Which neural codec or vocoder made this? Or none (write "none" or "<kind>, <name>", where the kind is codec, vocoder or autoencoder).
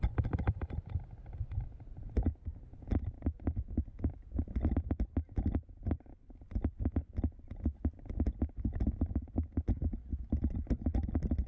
none